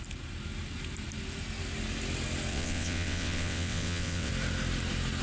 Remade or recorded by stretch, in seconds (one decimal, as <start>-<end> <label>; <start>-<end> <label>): 0.0-2.5 recorded; 2.5-4.3 remade; 4.3-5.2 recorded